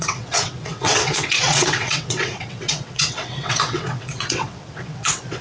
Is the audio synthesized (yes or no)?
yes